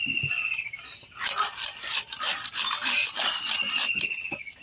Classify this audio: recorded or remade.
recorded